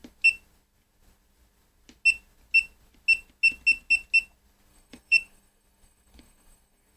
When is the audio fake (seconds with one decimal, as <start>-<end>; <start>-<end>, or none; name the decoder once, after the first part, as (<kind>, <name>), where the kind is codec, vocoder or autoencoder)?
4.7-7.0 (codec, DAC)